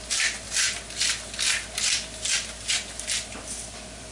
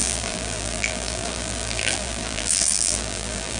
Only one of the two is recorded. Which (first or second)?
first